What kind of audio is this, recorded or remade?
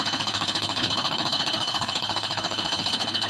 remade